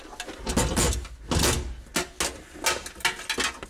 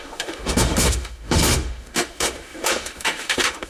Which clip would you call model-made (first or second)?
second